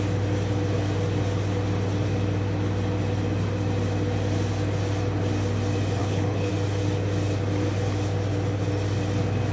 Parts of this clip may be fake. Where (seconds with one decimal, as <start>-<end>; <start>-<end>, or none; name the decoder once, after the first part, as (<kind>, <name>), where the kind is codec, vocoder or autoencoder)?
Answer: 6.0-6.5 (codec, HILCodec)